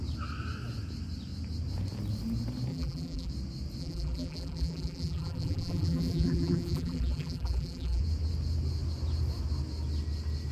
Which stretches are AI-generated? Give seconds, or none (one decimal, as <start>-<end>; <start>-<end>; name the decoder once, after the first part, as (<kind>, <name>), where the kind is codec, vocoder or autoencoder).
2.7-3.3 (vocoder, BigVGAN v2); 3.8-8.0